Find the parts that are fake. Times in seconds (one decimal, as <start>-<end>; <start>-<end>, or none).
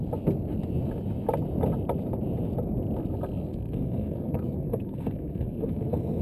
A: 3.5-6.2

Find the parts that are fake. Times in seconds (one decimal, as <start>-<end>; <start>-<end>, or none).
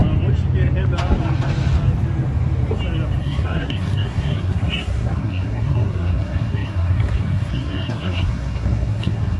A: 3.2-9.4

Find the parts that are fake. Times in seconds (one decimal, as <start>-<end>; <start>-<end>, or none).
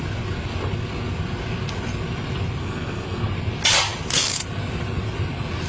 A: 2.6-3.3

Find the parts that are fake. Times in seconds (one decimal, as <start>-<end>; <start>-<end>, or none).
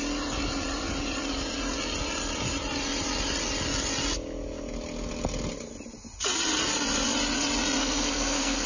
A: 7.8-8.7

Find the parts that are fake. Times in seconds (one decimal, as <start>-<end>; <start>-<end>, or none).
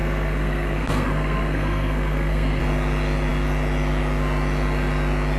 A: 0.0-2.6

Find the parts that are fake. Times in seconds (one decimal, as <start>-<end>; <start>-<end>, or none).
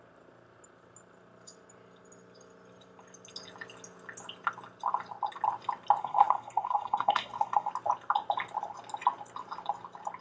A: 6.0-7.7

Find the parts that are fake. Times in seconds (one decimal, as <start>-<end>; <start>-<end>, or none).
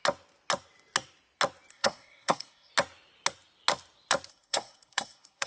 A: 1.7-2.7; 4.3-5.5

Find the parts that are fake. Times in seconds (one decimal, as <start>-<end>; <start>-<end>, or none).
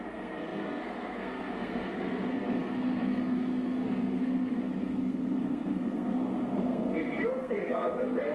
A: 0.0-8.3